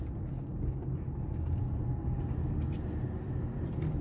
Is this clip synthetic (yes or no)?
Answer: no